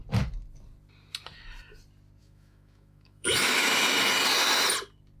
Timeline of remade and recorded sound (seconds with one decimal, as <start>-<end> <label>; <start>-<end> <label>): 0.0-2.2 recorded; 2.2-3.7 remade; 3.7-5.2 recorded